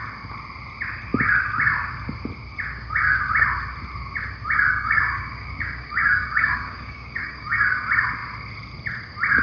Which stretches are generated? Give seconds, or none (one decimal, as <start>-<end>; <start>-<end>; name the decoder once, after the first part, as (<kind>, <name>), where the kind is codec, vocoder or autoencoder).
4.7-7.7 (codec, DAC)